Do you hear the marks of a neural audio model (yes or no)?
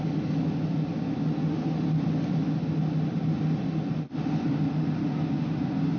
no